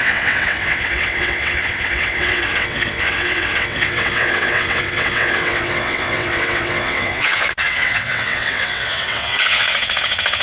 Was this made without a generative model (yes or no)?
no